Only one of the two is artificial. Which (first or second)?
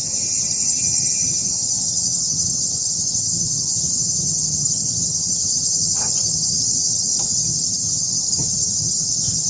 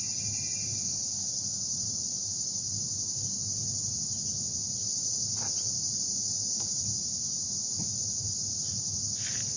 first